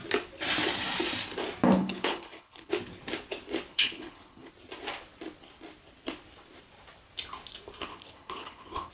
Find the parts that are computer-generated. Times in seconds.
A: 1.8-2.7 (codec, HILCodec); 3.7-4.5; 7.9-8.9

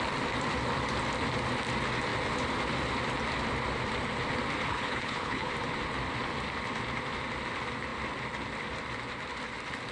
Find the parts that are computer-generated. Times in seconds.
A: 4.7-5.5 (codec, HILCodec)

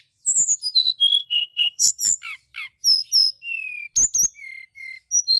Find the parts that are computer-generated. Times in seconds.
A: 1.2-1.9 (codec, HILCodec)